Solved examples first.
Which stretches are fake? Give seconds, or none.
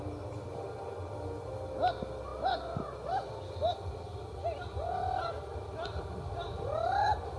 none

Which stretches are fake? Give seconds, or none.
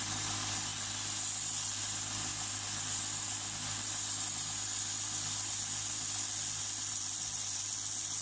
none